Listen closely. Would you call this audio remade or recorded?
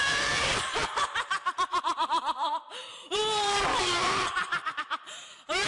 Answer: remade